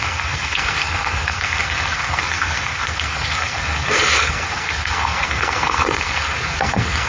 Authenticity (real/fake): fake